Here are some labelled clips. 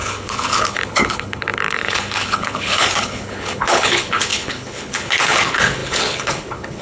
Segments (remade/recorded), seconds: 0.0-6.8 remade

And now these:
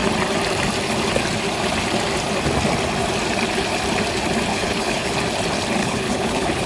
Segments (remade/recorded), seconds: 0.0-4.5 recorded; 4.5-5.1 remade; 5.1-5.8 recorded; 5.8-6.7 remade

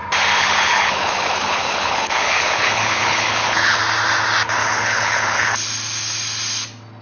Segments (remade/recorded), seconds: 0.0-0.4 recorded; 0.4-3.8 remade; 3.8-4.6 recorded; 4.6-5.7 remade; 5.7-7.0 recorded

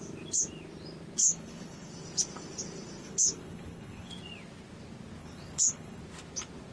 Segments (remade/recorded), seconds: 0.0-1.2 recorded; 1.2-1.9 remade; 1.9-3.0 recorded; 3.0-4.1 remade; 4.1-5.2 recorded; 5.2-6.0 remade; 6.0-6.7 recorded